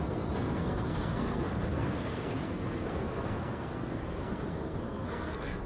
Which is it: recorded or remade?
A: remade